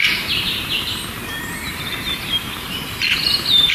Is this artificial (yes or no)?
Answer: yes